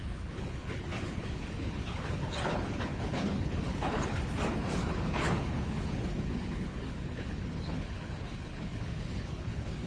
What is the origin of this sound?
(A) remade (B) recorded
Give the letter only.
A